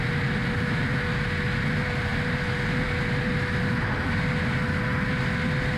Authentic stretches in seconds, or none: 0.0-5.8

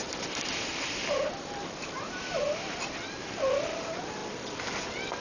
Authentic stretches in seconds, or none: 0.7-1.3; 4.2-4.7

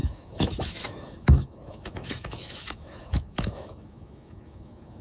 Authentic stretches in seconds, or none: none

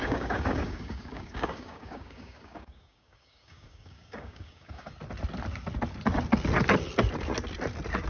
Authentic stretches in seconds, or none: 4.9-8.1